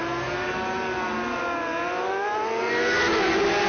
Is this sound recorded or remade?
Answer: recorded